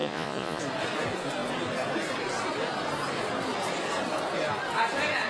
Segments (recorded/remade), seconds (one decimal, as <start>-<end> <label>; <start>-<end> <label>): 0.0-0.6 remade; 0.6-5.3 recorded